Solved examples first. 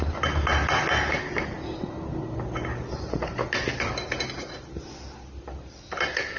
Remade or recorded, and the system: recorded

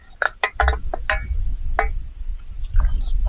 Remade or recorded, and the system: recorded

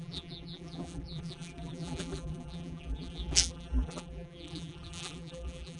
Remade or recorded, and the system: remade, vocoder, BigVGAN v2